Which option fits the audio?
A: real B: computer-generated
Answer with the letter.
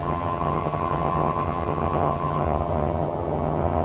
B